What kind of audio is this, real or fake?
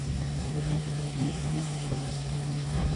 fake